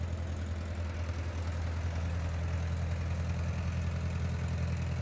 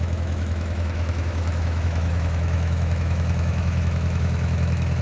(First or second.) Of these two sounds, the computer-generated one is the second